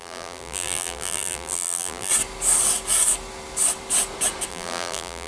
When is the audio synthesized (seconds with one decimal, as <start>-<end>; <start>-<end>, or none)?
0.0-2.1; 4.5-5.3

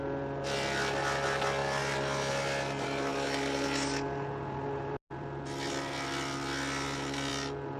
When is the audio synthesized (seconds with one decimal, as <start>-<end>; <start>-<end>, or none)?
none

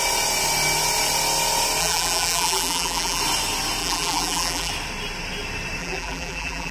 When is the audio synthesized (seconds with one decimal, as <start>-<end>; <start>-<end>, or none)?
1.8-3.2; 3.8-4.7; 5.8-6.7

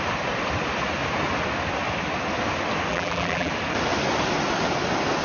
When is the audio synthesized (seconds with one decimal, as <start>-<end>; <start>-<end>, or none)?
2.9-3.5

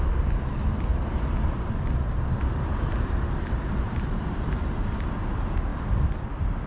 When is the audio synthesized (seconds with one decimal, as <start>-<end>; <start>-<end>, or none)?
0.9-4.9

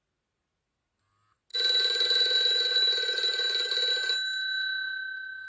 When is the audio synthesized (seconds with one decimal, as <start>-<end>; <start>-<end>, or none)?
1.5-3.9